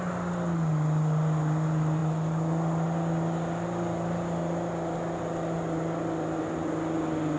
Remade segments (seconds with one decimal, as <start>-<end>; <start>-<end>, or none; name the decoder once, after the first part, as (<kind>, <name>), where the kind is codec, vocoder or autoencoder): none